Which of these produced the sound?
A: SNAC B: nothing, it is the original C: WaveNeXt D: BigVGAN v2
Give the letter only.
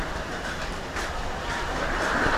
D